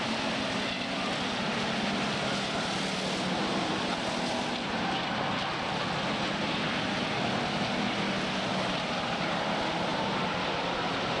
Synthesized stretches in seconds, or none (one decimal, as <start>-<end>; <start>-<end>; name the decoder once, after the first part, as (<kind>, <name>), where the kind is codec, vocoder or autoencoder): none